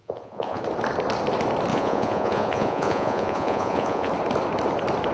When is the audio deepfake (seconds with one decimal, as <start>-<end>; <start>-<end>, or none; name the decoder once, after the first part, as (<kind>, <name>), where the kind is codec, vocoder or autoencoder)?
0.0-0.6 (vocoder, Vocos); 1.7-4.1